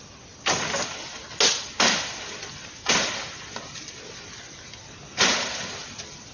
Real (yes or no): yes